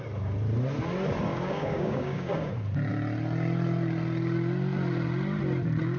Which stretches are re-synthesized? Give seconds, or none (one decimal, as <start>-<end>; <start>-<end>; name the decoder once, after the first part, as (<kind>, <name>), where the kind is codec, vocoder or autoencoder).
1.3-2.5 (codec, DAC)